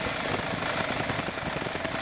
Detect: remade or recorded recorded